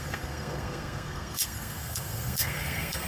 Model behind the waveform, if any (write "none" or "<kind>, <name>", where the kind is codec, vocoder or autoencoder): codec, SNAC